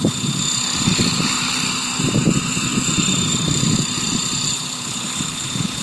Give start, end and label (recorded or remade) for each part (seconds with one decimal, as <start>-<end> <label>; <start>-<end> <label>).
0.0-5.8 remade